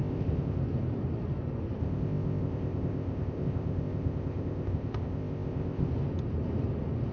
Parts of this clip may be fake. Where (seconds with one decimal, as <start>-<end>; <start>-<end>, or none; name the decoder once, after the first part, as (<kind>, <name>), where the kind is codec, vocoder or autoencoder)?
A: 0.0-0.6 (codec, ZipCodec); 1.8-5.9